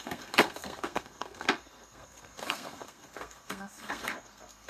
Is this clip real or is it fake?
fake